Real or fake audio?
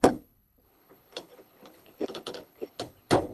fake